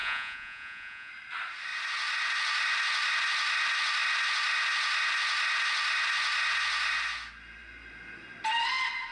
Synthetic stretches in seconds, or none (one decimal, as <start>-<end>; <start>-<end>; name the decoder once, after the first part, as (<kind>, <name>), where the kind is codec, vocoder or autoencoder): 0.0-1.1 (vocoder, Vocos)